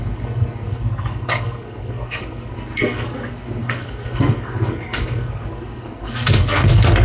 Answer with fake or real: fake